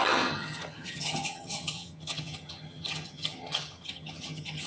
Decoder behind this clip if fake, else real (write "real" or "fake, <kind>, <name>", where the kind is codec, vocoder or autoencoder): fake, vocoder, HiFi-GAN